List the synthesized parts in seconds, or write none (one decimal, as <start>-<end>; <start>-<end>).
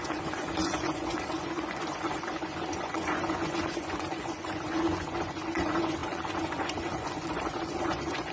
0.0-8.3